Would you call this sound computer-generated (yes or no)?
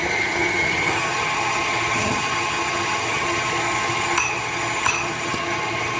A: yes